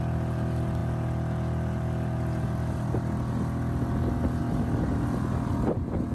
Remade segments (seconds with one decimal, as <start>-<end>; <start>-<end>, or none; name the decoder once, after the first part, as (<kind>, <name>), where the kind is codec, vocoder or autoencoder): none